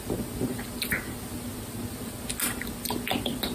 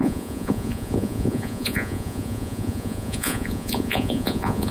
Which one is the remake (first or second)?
second